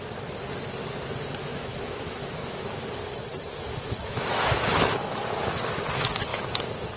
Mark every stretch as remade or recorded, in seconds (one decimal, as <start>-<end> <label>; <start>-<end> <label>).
0.0-1.5 recorded; 1.5-2.7 remade; 2.7-4.0 recorded; 4.0-5.3 remade; 5.3-7.0 recorded